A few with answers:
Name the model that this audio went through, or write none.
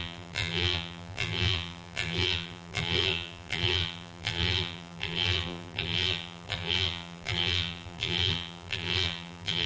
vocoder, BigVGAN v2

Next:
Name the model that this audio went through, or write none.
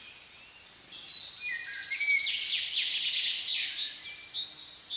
none